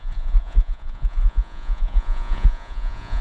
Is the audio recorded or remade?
remade